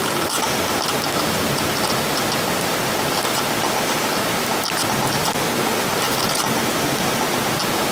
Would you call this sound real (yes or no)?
yes